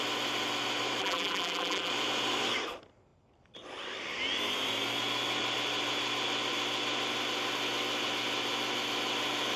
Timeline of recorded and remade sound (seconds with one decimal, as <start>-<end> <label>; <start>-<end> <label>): 0.0-1.0 recorded; 1.0-1.9 remade; 1.9-9.6 recorded